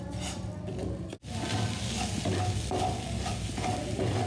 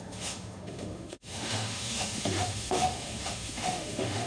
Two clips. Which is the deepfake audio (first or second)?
second